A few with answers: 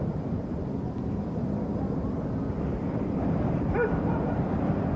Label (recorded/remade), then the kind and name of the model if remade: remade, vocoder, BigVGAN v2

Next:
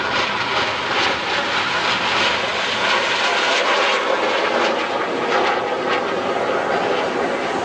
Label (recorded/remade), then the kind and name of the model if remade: recorded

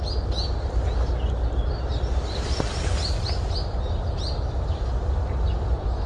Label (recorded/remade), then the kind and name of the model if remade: recorded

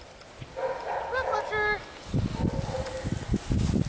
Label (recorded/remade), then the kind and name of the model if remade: recorded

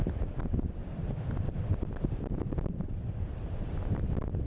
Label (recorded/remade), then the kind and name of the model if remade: remade, vocoder, BigVGAN v2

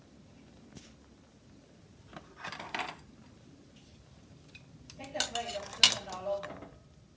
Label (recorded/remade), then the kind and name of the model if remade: recorded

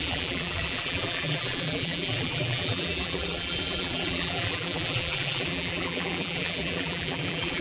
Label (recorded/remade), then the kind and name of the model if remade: remade, vocoder, BigVGAN v2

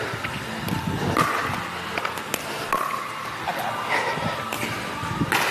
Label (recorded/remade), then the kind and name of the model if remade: recorded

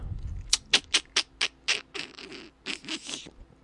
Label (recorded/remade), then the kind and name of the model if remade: recorded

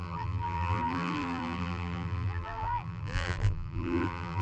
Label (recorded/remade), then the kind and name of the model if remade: remade, vocoder, BigVGAN v2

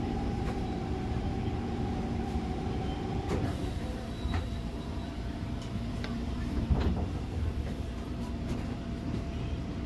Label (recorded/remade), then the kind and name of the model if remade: remade, vocoder, BigVGAN v2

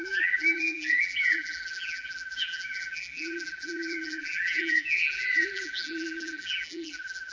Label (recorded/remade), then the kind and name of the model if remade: remade, vocoder, BigVGAN v2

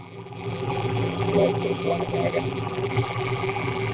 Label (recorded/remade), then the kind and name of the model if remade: remade, vocoder, BigVGAN v2